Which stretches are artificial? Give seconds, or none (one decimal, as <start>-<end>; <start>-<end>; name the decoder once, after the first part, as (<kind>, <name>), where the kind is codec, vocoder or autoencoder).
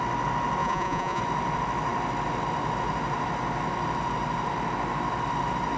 0.6-1.2 (vocoder, Vocos)